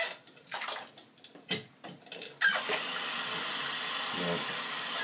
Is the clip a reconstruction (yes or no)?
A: no